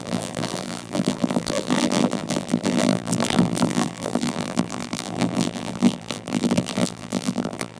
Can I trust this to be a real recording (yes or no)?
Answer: no